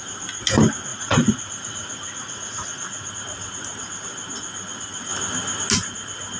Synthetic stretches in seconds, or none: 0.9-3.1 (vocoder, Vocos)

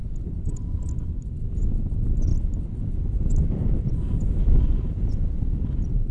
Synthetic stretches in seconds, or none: 0.0-0.8 (vocoder, BigVGAN v2); 2.3-6.1